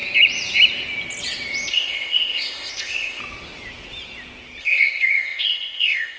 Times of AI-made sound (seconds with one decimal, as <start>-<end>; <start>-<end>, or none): 1.7-3.2; 4.6-6.2